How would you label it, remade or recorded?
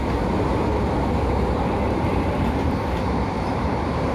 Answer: remade